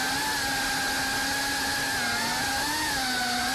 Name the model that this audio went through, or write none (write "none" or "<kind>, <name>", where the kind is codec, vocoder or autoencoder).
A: none